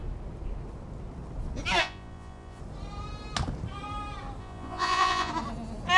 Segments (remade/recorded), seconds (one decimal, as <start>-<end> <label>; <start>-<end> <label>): 0.0-1.8 recorded; 1.8-2.6 remade; 2.6-4.4 recorded; 4.4-5.3 remade; 5.3-6.0 recorded

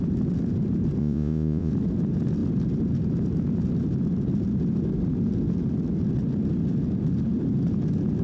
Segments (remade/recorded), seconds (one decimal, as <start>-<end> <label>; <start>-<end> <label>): 0.0-1.0 recorded; 1.0-1.7 remade; 1.7-8.2 recorded

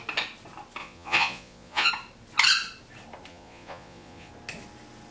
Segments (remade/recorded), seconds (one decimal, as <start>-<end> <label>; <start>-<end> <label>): 0.0-0.8 recorded; 0.8-1.9 remade; 1.9-3.3 recorded; 3.3-4.3 remade; 4.3-5.1 recorded